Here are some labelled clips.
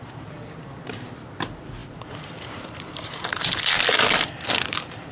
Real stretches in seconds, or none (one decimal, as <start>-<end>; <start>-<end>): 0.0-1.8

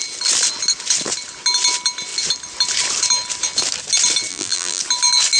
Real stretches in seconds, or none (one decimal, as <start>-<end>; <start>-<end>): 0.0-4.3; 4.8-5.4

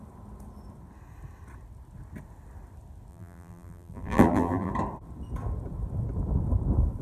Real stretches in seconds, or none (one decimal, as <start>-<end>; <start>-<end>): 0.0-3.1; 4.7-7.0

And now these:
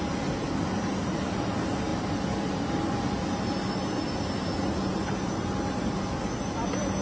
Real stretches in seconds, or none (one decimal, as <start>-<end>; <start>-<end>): 0.0-1.0; 1.5-1.9; 3.4-4.9